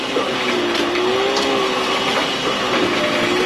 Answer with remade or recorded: recorded